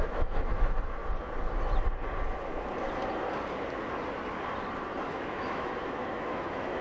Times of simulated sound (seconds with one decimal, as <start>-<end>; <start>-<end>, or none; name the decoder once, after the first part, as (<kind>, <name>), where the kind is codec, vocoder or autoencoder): 0.0-1.0 (autoencoder, DAC-VAE); 5.1-6.8